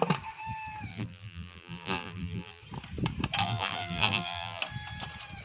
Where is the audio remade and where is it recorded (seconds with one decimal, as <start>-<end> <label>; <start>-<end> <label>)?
0.0-0.9 recorded; 0.9-2.6 remade; 2.6-3.4 recorded; 3.4-4.6 remade; 4.6-5.4 recorded